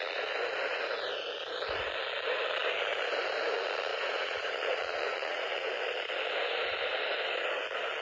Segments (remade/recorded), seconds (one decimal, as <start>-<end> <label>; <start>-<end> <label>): 0.0-3.9 recorded; 3.9-5.7 remade; 5.7-8.0 recorded